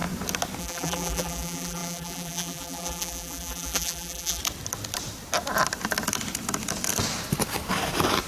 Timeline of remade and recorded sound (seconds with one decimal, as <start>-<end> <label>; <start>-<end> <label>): 0.0-0.6 recorded; 0.6-4.4 remade; 4.4-8.3 recorded